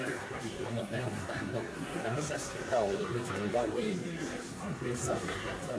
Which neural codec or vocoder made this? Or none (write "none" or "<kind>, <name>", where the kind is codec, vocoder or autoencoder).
codec, SNAC